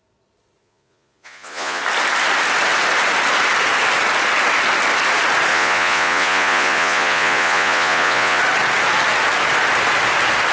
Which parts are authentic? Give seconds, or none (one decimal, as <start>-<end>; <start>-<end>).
0.0-0.6; 1.8-5.5; 8.4-10.5